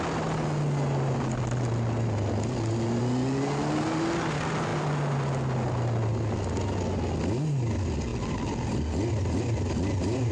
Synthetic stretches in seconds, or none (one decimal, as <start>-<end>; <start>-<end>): none